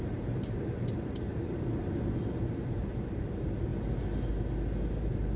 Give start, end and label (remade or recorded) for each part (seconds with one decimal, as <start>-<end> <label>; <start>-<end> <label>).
0.0-1.8 remade; 1.8-2.5 recorded; 2.5-3.7 remade; 3.7-5.0 recorded; 5.0-5.4 remade